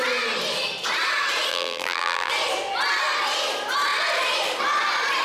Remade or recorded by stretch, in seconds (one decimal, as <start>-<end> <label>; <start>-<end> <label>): 0.0-1.5 recorded; 1.5-2.3 remade; 2.3-5.2 recorded